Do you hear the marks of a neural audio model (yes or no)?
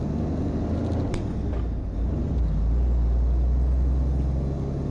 no